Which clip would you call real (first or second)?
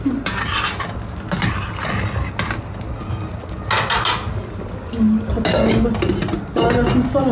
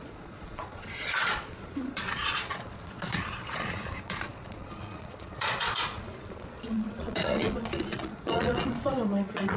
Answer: first